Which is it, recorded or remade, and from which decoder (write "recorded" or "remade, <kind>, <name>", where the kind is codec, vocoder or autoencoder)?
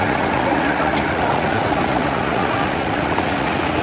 remade, vocoder, Vocos